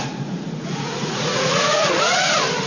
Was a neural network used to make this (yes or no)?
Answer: yes